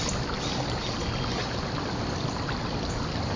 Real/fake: real